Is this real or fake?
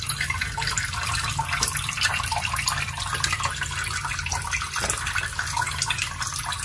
real